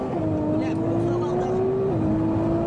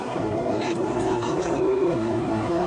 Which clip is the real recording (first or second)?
first